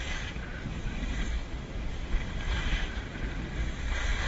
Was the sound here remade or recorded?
remade